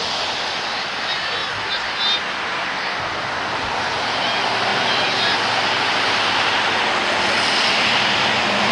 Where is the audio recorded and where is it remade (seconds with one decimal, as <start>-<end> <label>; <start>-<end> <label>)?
0.0-8.7 recorded